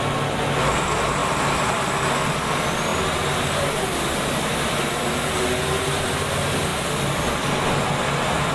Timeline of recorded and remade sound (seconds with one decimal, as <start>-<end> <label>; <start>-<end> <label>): 0.0-8.5 recorded